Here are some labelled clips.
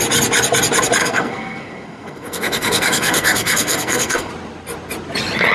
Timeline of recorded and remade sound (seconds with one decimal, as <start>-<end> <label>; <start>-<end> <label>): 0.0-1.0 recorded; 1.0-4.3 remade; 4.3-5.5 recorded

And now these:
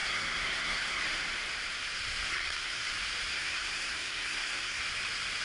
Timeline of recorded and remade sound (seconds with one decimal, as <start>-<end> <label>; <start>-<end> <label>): 0.0-1.0 remade; 1.0-2.3 recorded; 2.3-2.9 remade; 2.9-3.3 recorded; 3.3-4.8 remade; 4.8-5.4 recorded

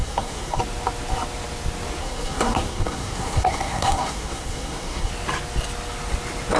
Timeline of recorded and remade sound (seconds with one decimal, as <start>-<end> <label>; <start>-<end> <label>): 0.0-0.6 remade; 0.6-2.0 recorded; 2.0-5.1 remade; 5.1-6.6 recorded